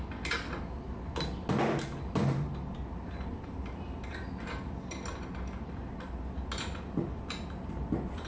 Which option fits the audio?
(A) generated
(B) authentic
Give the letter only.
B